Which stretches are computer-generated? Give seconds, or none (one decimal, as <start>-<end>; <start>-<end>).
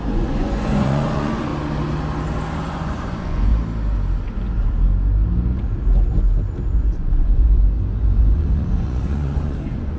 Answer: 0.0-1.5; 2.6-3.5; 6.7-10.0